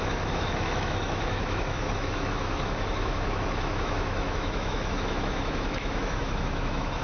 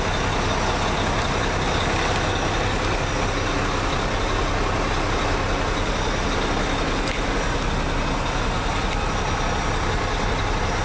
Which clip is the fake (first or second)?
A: first